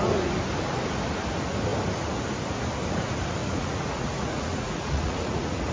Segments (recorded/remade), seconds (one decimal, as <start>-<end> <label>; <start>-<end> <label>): 0.0-3.4 recorded; 3.4-5.7 remade